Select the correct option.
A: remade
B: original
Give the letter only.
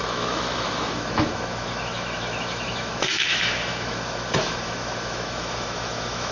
A